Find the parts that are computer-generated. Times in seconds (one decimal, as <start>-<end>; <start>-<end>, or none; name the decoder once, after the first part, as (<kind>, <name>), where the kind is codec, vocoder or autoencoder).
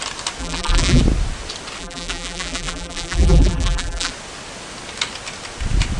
0.4-1.0 (vocoder, BigVGAN v2); 1.8-4.1